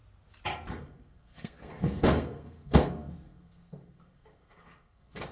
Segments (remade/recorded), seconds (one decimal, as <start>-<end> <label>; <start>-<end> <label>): 0.0-0.7 recorded; 0.7-5.3 remade